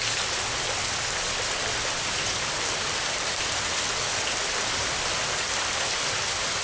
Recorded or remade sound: recorded